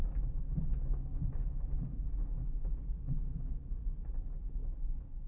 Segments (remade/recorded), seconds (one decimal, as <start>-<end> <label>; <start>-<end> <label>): 0.0-5.3 recorded